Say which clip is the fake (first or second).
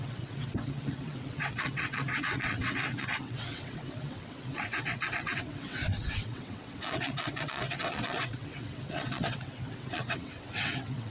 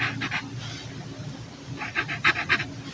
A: first